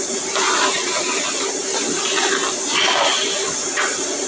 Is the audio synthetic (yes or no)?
no